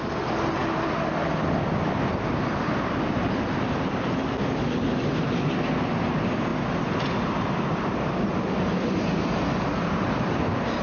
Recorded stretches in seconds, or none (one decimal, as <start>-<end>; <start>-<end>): 0.0-10.8